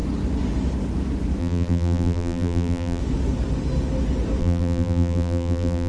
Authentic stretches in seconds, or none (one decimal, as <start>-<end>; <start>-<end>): 0.0-1.4; 3.0-4.4